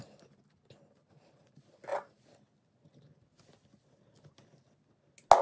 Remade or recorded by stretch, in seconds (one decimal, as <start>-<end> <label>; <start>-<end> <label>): 0.0-5.4 recorded